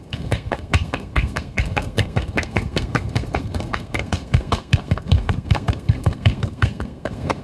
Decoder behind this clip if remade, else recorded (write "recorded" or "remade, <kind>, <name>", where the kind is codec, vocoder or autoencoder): remade, codec, SNAC